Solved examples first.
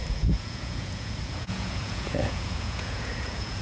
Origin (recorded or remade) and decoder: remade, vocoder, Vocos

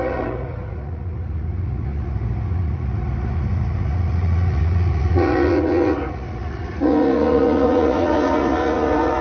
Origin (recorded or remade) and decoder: remade, vocoder, Vocos